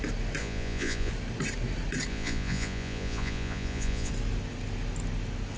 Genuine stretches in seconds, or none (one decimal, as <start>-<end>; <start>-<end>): 0.0-0.4; 1.1-2.1; 4.1-5.6